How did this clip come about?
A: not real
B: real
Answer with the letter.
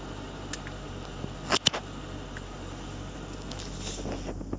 B